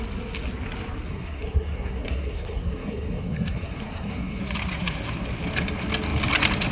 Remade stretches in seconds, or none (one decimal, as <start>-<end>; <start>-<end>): 1.1-4.4